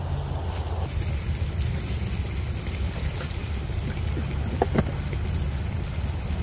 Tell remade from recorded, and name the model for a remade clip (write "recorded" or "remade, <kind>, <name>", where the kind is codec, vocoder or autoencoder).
recorded